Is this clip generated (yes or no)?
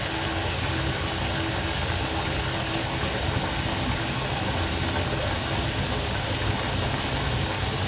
no